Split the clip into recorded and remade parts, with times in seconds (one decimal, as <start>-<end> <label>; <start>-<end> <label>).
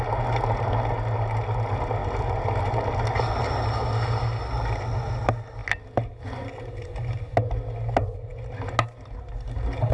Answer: 0.0-9.9 recorded